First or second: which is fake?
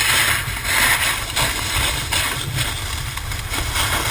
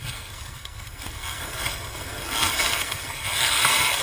second